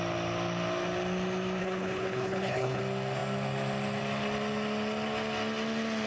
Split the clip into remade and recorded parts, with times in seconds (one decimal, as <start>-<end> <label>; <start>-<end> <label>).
0.0-1.6 recorded; 1.6-2.8 remade; 2.8-6.1 recorded